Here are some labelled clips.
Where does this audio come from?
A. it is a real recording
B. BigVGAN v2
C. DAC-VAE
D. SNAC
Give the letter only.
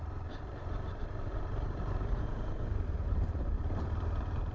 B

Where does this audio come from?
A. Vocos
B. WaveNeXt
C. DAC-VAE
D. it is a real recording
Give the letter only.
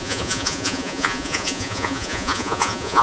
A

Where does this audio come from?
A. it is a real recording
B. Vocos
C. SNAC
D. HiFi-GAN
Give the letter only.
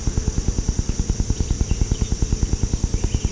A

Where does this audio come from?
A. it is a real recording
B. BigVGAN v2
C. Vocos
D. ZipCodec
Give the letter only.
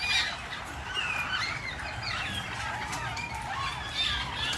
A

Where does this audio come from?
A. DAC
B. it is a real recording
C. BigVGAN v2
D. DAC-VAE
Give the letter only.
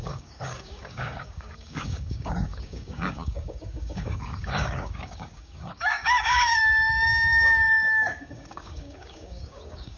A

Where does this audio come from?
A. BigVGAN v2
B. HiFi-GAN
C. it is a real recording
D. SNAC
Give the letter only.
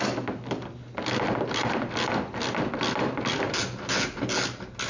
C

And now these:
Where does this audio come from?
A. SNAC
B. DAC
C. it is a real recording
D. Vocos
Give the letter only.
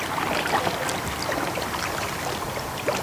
C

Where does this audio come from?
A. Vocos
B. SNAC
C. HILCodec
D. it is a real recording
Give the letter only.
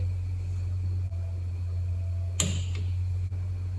D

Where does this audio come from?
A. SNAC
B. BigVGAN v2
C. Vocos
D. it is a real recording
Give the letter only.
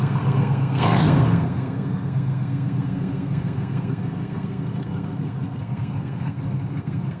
A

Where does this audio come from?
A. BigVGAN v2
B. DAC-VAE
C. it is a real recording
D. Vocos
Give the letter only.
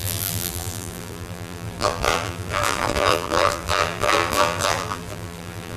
A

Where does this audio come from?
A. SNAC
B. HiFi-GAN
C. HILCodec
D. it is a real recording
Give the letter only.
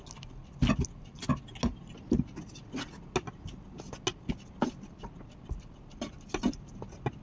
D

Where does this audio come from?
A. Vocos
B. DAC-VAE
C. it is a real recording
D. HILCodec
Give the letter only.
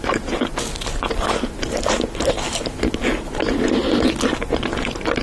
C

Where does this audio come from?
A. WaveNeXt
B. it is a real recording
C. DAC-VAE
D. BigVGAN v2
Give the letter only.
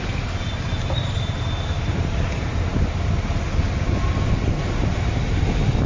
B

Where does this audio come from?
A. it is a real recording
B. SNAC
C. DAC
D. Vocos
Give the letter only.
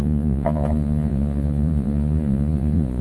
D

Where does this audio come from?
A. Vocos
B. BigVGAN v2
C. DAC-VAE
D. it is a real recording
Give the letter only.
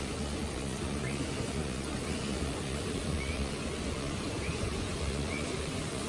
A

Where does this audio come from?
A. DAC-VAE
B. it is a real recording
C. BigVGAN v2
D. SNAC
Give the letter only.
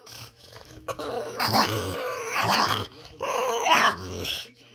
A